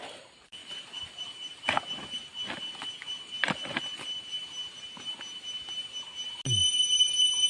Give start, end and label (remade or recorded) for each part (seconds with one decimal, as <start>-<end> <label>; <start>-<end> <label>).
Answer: 0.0-6.6 recorded; 6.6-7.5 remade